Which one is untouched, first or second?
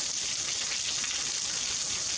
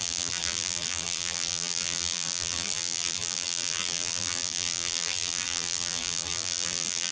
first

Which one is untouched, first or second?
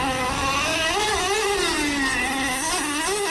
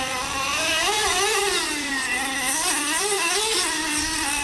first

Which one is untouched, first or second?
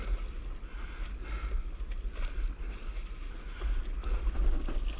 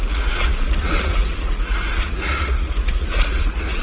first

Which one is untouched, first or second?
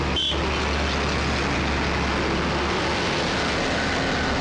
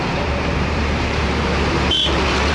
first